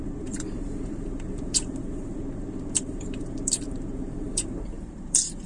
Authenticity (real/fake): fake